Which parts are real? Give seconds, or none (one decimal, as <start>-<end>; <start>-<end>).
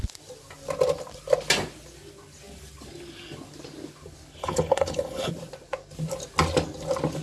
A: 0.0-4.4; 5.3-7.2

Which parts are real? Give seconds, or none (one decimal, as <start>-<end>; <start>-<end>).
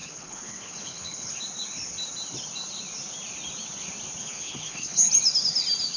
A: 1.4-4.2; 5.1-6.0